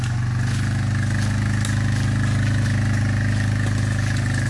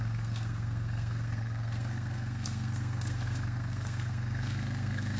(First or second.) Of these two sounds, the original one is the first